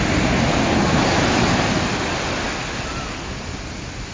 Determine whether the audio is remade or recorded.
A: recorded